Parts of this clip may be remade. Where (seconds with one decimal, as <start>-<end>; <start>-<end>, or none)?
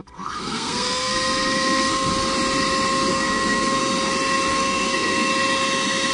0.0-2.1; 3.1-3.8; 4.5-5.3